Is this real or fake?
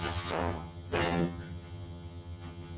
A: fake